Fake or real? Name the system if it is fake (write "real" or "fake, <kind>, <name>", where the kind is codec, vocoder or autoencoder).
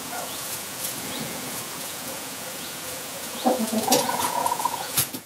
fake, vocoder, Vocos